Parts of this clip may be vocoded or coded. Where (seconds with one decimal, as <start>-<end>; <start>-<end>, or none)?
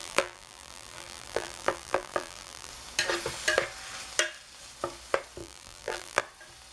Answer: 0.0-2.7; 5.4-6.2